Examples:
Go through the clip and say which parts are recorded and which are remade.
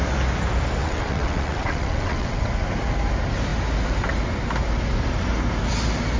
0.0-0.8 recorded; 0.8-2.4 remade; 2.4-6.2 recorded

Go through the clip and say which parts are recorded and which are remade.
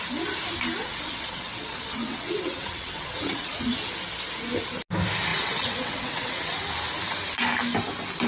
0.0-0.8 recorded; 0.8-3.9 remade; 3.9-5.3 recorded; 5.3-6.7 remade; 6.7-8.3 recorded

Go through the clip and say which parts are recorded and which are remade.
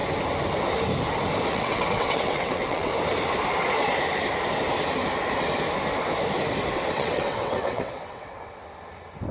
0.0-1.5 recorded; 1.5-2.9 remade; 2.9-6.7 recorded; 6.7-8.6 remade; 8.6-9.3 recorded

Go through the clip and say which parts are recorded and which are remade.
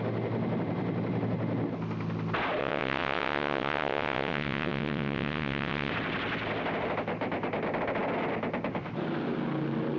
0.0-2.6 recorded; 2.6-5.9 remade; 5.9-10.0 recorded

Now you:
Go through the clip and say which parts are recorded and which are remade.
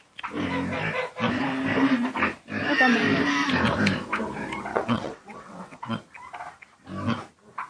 0.0-4.7 recorded; 4.7-6.0 remade; 6.0-7.7 recorded